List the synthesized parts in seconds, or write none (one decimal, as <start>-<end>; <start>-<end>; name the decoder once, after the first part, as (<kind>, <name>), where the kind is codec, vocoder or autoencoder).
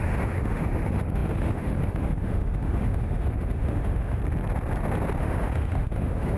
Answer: 0.0-4.2 (autoencoder, DAC-VAE); 5.2-6.4